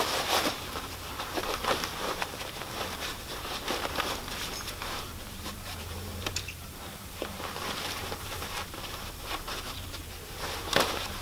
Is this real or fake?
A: fake